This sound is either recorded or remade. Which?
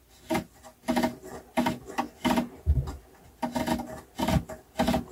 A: recorded